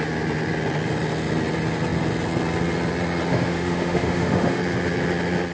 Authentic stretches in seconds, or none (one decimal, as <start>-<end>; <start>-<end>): 0.0-3.3; 4.6-5.5